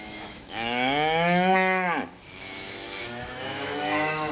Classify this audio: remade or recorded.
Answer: remade